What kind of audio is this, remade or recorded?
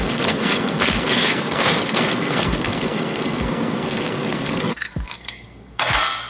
remade